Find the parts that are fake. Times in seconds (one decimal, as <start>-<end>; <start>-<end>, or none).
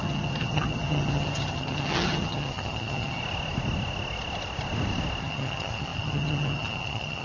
0.0-3.2; 5.2-7.2